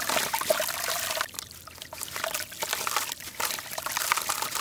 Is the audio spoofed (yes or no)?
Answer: yes